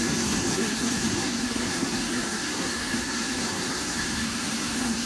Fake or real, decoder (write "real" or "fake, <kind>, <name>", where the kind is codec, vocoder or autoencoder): fake, codec, SNAC